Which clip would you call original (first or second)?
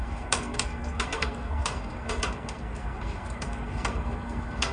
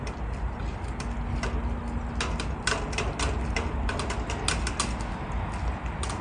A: second